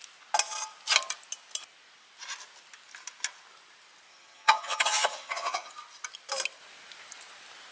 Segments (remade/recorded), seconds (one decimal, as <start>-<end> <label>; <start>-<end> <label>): 0.0-4.1 recorded; 4.1-5.7 remade; 5.7-7.7 recorded